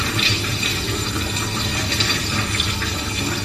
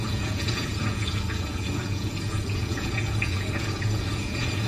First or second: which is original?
first